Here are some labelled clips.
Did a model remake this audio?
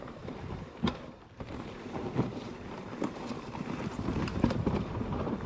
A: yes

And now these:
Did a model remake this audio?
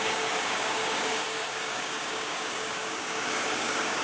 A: yes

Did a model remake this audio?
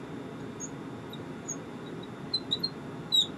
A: no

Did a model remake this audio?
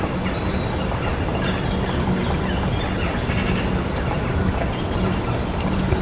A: no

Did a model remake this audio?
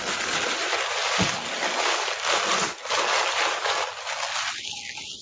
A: no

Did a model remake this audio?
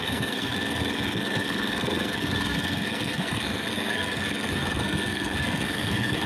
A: yes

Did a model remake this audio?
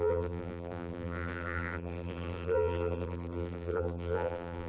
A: yes